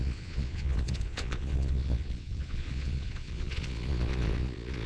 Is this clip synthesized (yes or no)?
yes